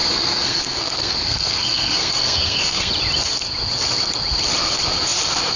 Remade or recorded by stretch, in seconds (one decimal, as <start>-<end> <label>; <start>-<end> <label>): 0.0-2.9 remade; 2.9-5.6 recorded